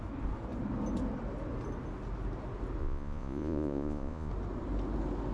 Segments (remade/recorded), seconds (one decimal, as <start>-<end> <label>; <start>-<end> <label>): 0.0-2.8 recorded; 2.8-4.3 remade; 4.3-5.3 recorded